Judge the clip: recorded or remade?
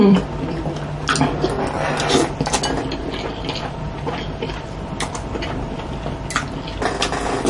recorded